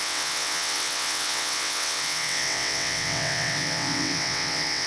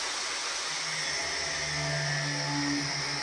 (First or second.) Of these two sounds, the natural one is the second